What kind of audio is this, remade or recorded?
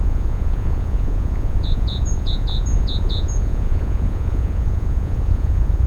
remade